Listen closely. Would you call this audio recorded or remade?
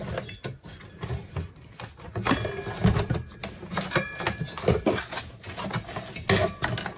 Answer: recorded